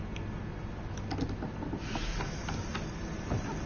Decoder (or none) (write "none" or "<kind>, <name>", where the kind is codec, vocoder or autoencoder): none